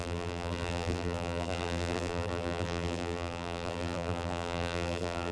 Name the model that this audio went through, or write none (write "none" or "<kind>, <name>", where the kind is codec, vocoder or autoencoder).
vocoder, BigVGAN v2